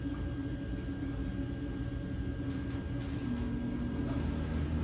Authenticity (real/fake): real